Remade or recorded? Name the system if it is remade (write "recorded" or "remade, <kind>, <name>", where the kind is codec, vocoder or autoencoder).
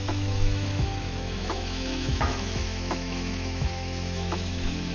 remade, autoencoder, DAC-VAE